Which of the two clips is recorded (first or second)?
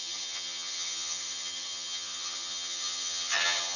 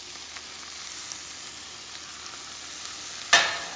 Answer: second